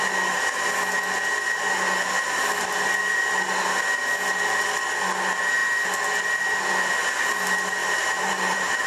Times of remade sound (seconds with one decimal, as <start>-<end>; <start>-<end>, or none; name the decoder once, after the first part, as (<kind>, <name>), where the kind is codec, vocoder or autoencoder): 7.8-8.9 (vocoder, BigVGAN v2)